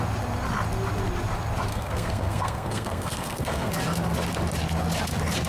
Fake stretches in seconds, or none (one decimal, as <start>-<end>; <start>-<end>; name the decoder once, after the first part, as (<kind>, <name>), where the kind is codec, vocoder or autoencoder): 1.7-3.7 (codec, SNAC)